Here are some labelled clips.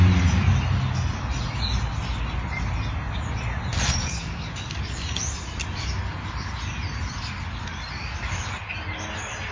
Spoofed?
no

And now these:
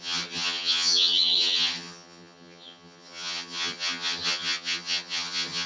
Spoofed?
yes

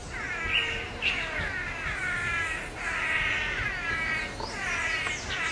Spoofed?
no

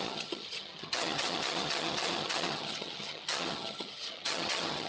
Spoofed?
yes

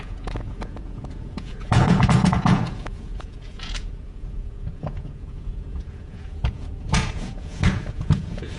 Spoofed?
yes